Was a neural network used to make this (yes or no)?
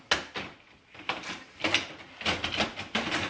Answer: no